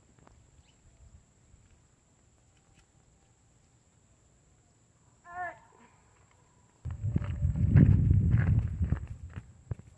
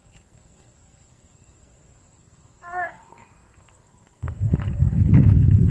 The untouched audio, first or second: first